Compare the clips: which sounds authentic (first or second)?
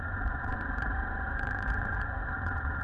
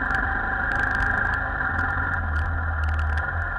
second